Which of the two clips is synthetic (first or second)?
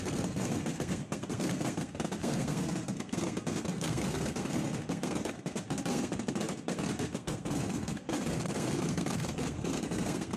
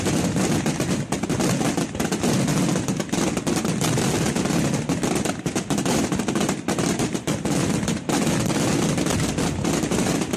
first